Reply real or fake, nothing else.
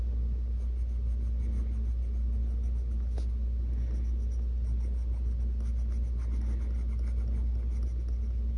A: real